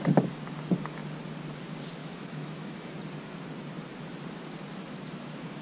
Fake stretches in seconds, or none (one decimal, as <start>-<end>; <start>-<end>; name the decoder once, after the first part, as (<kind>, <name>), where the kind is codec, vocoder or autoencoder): 2.0-2.9 (autoencoder, DAC-VAE)